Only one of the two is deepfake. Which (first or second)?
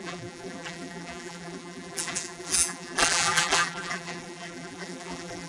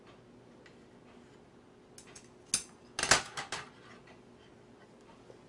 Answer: first